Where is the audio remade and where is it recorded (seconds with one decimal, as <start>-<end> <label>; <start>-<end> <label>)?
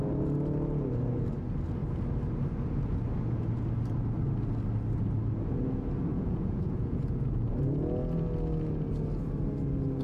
0.0-6.1 recorded; 6.1-7.5 remade; 7.5-10.0 recorded